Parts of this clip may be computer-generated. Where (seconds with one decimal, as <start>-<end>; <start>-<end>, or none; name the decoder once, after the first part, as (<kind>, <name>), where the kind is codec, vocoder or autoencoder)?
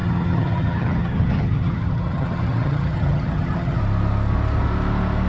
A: 0.0-3.8 (vocoder, HiFi-GAN)